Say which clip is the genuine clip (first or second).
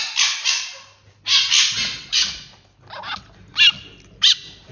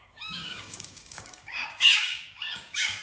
first